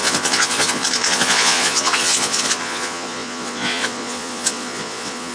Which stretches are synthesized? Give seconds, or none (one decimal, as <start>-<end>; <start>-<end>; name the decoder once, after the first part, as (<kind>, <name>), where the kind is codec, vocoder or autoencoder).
0.0-5.3 (vocoder, Vocos)